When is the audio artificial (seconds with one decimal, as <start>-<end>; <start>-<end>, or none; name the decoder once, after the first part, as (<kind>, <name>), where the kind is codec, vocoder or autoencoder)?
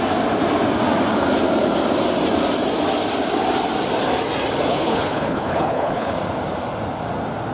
4.7-6.1 (codec, HILCodec)